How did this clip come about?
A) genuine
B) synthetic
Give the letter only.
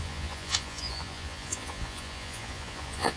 B